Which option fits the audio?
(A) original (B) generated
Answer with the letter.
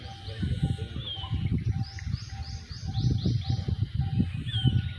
A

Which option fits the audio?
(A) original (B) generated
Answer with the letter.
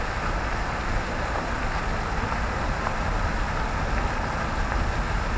A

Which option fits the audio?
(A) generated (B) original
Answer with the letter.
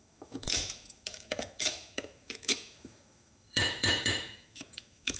A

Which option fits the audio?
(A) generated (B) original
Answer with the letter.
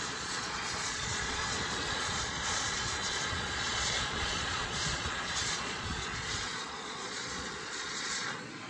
A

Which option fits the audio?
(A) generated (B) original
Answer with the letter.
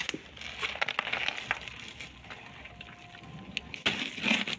B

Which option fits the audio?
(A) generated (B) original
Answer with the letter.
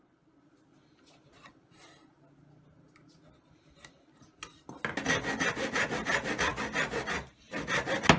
B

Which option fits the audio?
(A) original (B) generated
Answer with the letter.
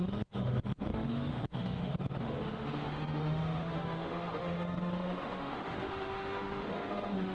B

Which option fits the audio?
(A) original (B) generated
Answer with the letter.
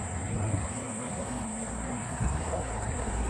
B